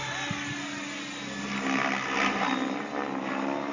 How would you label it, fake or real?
real